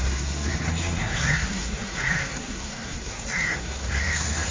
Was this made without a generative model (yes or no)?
no